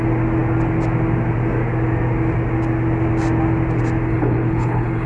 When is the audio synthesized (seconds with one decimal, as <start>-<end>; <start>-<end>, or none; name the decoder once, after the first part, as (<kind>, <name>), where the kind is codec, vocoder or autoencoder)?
4.1-5.1 (codec, HILCodec)